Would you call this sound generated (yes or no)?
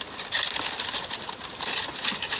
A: no